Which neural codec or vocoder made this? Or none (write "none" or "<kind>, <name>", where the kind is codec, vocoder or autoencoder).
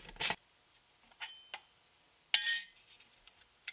none